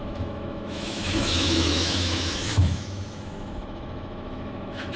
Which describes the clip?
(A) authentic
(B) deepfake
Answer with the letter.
B